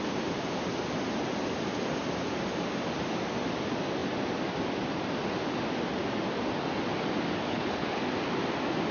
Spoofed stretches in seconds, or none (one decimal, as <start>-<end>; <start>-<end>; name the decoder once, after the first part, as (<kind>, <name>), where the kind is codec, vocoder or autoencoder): 7.5-8.0 (codec, HILCodec)